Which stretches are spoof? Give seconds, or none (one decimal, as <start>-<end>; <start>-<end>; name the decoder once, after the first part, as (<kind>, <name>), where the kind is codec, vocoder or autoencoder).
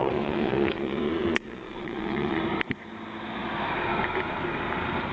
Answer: 0.0-2.4 (vocoder, Vocos)